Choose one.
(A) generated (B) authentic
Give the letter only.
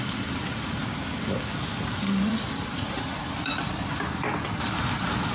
A